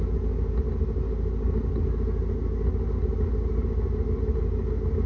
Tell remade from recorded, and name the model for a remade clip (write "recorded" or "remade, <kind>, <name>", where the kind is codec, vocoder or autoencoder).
recorded